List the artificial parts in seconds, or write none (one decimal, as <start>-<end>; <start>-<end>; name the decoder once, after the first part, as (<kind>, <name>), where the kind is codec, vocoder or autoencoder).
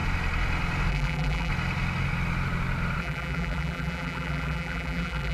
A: 0.9-1.5 (vocoder, BigVGAN v2); 3.0-5.3